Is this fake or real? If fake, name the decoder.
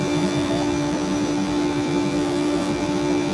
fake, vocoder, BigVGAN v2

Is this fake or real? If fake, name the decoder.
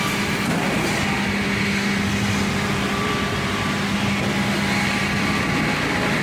real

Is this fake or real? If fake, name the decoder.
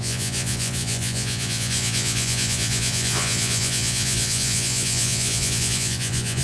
fake, vocoder, Vocos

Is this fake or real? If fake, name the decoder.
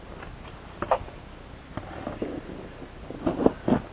real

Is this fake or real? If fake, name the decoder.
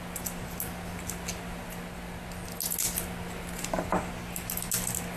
real